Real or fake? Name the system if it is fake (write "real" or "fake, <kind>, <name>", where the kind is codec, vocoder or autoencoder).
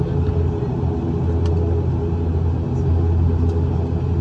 real